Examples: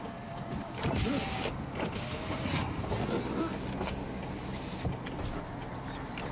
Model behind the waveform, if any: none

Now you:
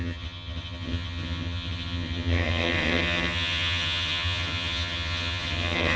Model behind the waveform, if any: vocoder, HiFi-GAN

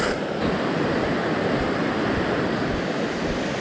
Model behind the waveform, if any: none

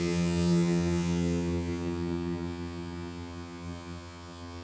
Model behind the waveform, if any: vocoder, HiFi-GAN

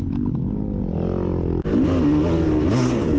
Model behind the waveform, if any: none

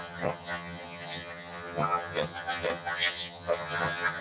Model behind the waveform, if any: vocoder, HiFi-GAN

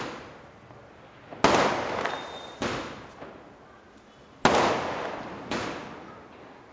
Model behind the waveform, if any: none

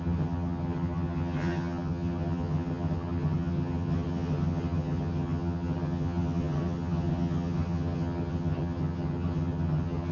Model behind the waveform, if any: vocoder, HiFi-GAN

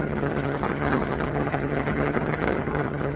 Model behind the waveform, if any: vocoder, HiFi-GAN